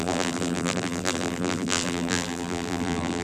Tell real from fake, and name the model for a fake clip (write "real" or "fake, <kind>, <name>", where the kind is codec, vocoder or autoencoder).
fake, vocoder, BigVGAN v2